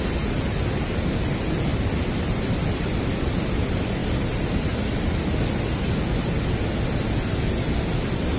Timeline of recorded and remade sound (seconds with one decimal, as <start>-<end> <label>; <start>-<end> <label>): 0.0-8.4 recorded